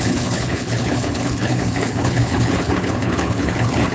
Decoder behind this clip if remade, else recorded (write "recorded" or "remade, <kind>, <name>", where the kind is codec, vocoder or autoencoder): remade, codec, HILCodec